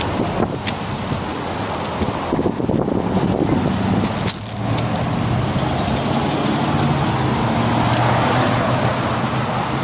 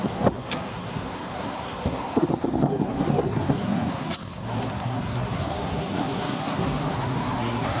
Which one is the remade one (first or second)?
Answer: second